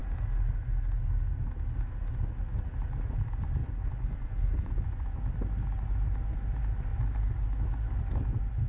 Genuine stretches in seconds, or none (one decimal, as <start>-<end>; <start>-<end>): 0.0-3.6; 5.2-8.7